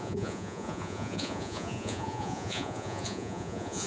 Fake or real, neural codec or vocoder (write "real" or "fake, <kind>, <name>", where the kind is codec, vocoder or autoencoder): fake, vocoder, Vocos